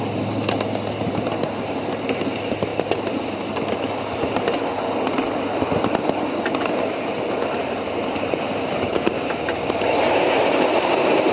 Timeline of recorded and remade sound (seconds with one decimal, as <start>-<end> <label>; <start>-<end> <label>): 0.0-11.3 recorded